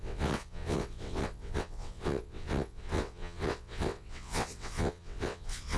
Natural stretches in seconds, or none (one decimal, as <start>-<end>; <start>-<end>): none